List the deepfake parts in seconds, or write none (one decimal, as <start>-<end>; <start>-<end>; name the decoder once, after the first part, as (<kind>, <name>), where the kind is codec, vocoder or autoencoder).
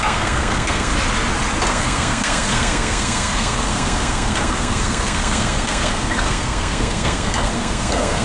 0.0-0.9 (codec, SNAC); 1.7-8.2